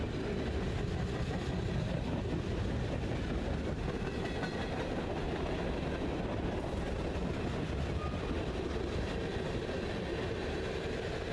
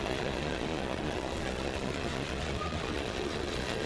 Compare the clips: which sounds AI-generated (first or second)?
second